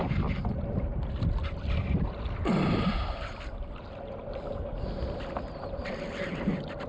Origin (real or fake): real